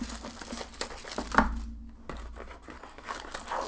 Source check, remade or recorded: recorded